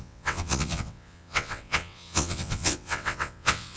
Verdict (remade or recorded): remade